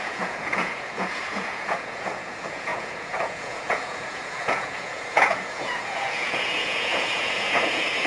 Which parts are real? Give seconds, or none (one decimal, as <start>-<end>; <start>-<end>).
none

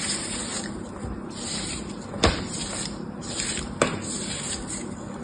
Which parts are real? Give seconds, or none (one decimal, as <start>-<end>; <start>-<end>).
0.0-5.2